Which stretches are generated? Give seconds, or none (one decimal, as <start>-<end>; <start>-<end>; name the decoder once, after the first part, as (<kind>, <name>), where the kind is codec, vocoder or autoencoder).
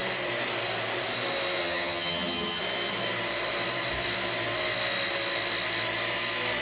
1.6-2.6 (vocoder, HiFi-GAN)